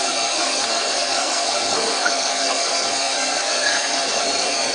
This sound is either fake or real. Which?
fake